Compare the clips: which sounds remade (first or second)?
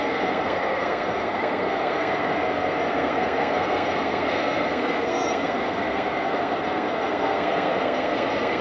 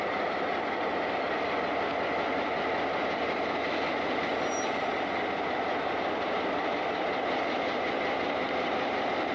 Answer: first